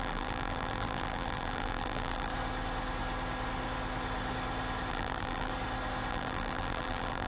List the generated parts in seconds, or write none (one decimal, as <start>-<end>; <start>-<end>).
0.0-2.3; 4.9-5.5; 6.1-7.3